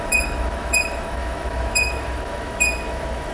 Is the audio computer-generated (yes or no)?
yes